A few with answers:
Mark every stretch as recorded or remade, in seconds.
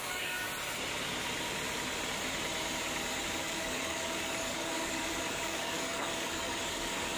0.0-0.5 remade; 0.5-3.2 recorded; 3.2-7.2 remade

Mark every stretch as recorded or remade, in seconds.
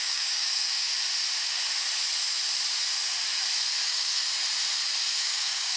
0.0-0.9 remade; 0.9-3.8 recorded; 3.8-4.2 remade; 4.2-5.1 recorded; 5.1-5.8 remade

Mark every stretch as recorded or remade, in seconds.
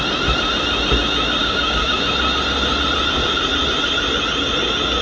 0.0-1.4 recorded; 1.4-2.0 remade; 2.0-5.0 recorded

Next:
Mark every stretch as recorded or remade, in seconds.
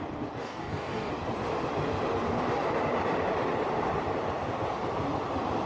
0.0-0.4 recorded; 0.4-1.1 remade; 1.1-5.7 recorded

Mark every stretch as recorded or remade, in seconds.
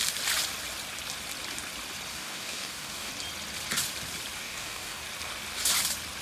0.0-2.1 recorded; 2.1-3.1 remade; 3.1-4.4 recorded; 4.4-5.0 remade; 5.0-6.2 recorded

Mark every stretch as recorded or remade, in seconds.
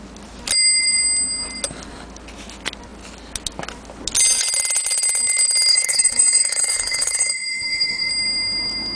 0.0-5.7 recorded; 5.7-8.1 remade; 8.1-9.0 recorded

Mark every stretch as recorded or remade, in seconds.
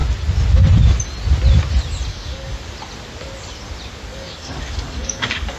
0.0-2.1 recorded; 2.1-2.6 remade; 2.6-4.1 recorded; 4.1-5.6 remade